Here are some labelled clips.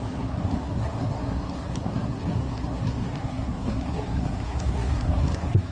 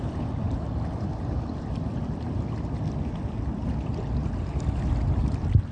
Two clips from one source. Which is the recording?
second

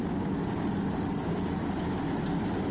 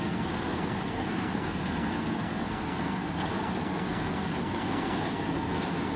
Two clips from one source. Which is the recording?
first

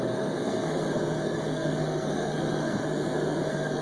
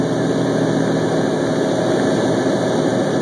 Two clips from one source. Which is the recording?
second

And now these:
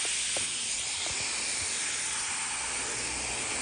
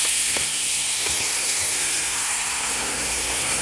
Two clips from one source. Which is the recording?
first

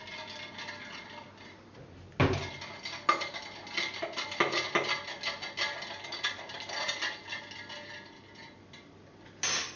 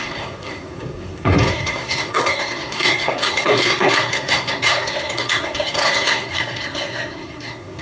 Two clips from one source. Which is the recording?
first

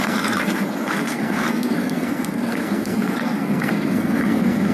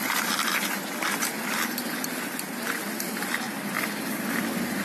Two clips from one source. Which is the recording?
second